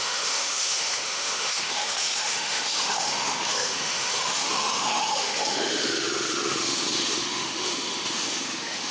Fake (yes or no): yes